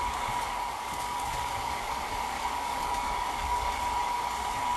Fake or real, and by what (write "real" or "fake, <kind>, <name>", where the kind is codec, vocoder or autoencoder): fake, codec, DAC